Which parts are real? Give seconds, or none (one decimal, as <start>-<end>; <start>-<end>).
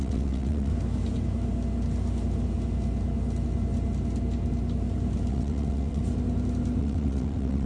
0.7-5.3; 6.0-6.8